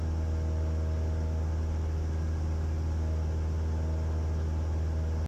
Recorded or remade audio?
recorded